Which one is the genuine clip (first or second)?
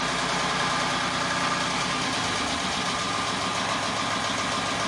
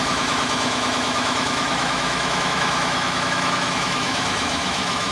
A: first